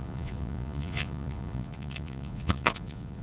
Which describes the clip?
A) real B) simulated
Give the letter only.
B